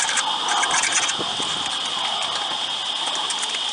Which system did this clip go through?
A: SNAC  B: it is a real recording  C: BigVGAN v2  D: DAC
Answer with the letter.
B